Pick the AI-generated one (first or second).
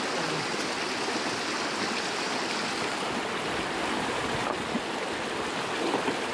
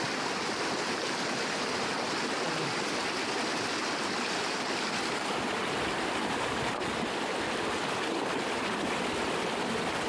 second